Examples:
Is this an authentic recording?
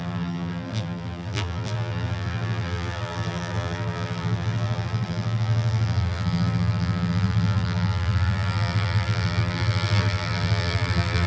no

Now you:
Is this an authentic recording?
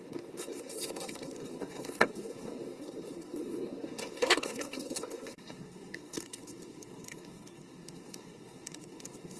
no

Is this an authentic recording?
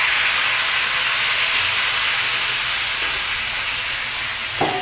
yes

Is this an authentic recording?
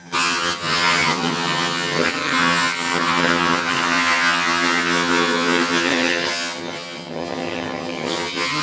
no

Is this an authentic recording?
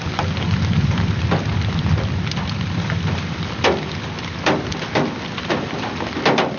yes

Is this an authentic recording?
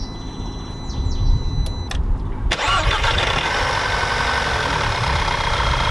yes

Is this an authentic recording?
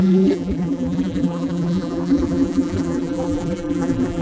no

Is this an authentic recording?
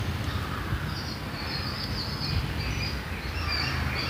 yes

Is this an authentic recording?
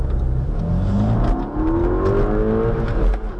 yes